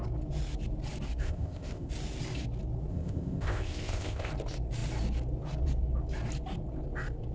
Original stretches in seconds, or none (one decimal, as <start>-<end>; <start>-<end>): 0.0-1.2; 1.9-2.9; 4.3-7.3